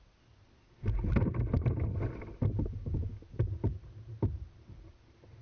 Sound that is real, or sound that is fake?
real